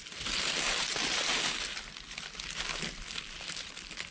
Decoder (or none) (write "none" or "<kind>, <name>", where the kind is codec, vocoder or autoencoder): none